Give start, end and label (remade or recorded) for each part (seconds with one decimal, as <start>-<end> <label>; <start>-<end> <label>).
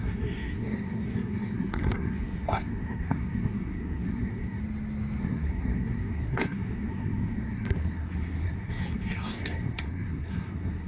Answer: 0.0-4.6 remade; 4.6-5.2 recorded; 5.2-10.9 remade